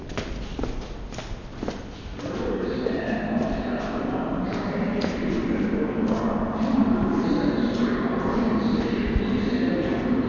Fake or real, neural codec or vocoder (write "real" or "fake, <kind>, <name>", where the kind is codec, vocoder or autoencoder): fake, vocoder, BigVGAN v2